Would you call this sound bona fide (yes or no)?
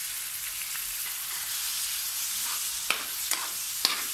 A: yes